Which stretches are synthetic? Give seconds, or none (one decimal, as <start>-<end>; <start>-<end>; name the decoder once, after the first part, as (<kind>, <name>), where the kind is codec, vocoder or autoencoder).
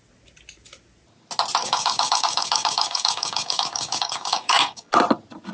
1.6-4.9 (codec, DAC)